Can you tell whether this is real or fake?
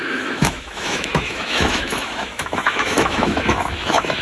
fake